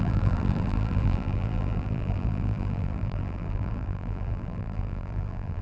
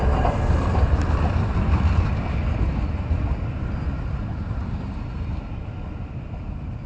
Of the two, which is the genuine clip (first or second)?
second